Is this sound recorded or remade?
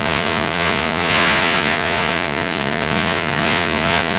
remade